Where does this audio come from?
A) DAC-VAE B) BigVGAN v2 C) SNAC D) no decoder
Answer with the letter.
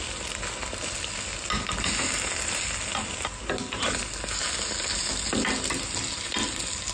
D